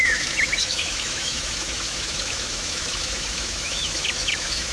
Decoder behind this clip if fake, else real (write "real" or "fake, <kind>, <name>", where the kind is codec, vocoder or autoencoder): fake, autoencoder, DAC-VAE